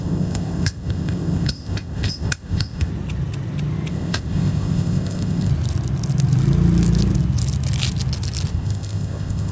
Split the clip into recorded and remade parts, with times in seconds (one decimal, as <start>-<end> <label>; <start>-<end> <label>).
0.0-2.9 remade; 2.9-3.9 recorded; 3.9-5.5 remade; 5.5-8.5 recorded; 8.5-9.5 remade

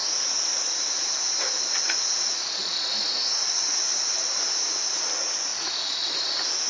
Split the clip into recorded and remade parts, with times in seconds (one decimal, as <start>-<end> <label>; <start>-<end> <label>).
0.0-4.0 remade; 4.0-5.5 recorded; 5.5-6.1 remade; 6.1-6.7 recorded

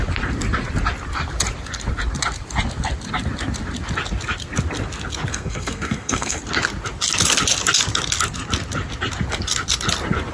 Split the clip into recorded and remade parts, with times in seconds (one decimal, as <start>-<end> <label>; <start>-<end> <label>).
0.0-5.3 recorded; 5.3-6.4 remade; 6.4-10.3 recorded

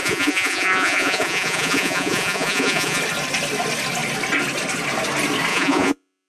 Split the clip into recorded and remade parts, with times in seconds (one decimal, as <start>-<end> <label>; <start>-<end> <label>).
0.0-3.0 remade; 3.0-5.5 recorded; 5.5-6.3 remade